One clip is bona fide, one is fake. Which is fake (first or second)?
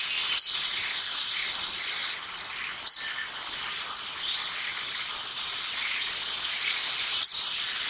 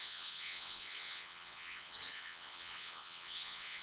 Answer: second